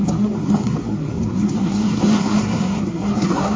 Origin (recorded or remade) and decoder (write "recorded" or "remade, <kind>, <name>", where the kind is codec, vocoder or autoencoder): remade, codec, SNAC